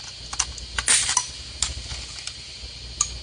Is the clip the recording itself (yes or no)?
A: yes